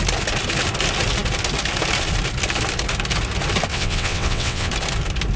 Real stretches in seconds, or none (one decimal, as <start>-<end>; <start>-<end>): 0.0-3.7; 4.7-5.4